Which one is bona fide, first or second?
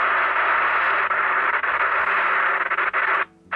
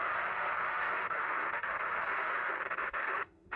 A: first